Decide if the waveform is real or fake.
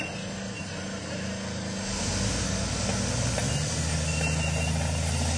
real